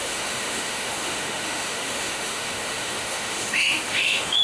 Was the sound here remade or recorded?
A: remade